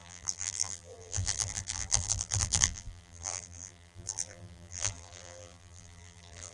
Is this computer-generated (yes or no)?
yes